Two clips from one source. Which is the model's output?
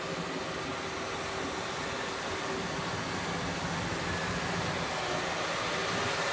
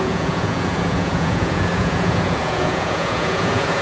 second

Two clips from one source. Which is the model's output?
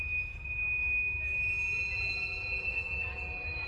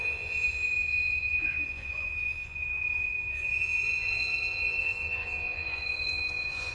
second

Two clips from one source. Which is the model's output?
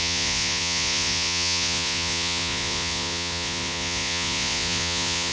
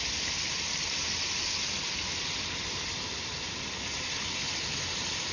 first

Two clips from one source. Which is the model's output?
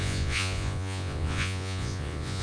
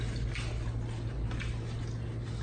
first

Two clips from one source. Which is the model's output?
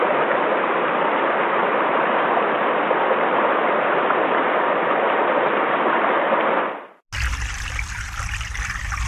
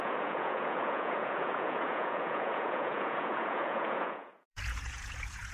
second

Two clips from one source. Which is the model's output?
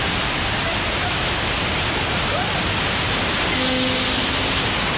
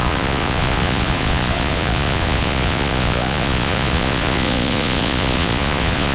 second